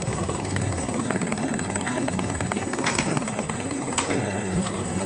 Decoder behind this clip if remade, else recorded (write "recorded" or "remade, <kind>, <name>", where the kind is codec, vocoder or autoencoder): remade, codec, SNAC